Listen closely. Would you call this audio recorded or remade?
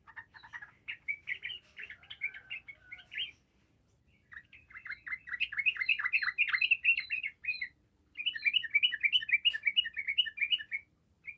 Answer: recorded